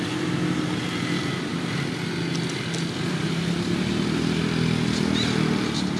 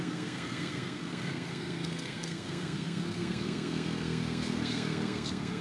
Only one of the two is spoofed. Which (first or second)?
second